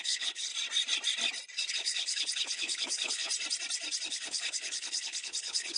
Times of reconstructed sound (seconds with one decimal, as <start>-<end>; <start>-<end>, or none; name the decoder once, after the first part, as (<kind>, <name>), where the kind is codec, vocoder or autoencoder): 0.0-0.5 (codec, HILCodec); 1.7-3.3; 4.1-5.8